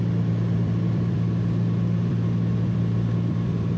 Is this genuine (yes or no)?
no